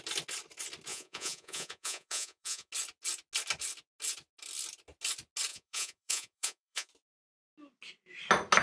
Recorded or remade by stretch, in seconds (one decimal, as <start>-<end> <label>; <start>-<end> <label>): 0.0-0.9 recorded; 0.9-2.7 remade; 2.7-5.5 recorded; 5.5-6.9 remade; 6.9-8.6 recorded